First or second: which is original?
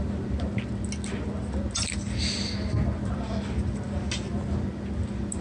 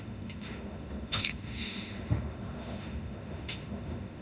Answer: first